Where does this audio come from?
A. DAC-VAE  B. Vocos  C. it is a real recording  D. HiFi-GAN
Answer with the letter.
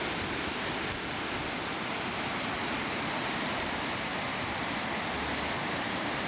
C